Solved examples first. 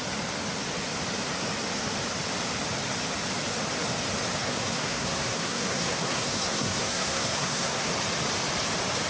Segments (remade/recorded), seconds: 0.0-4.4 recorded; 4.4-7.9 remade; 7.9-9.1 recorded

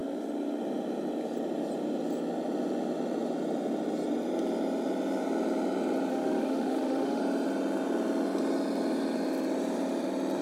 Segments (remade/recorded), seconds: 0.0-6.1 recorded; 6.1-7.2 remade; 7.2-10.4 recorded

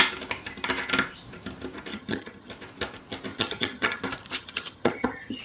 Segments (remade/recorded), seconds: 0.0-1.9 recorded; 1.9-2.5 remade; 2.5-3.3 recorded; 3.3-4.0 remade; 4.0-4.4 recorded; 4.4-5.4 remade

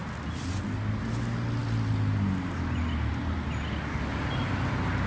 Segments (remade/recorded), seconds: 0.0-5.1 recorded

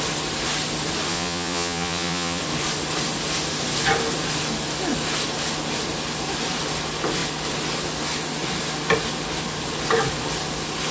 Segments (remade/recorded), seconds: 0.0-1.1 recorded; 1.1-2.4 remade; 2.4-10.9 recorded

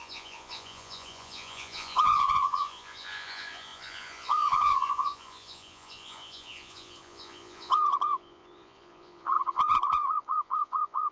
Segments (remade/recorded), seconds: 0.0-11.1 remade

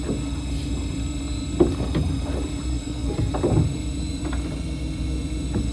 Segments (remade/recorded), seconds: 0.0-2.7 recorded; 2.7-3.3 remade; 3.3-5.7 recorded

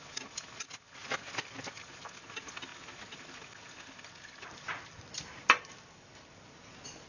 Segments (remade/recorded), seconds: 0.0-1.0 recorded; 1.0-2.1 remade; 2.1-7.1 recorded